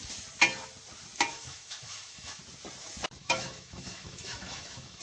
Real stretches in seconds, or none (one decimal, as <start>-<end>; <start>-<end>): 0.0-1.3; 2.4-3.2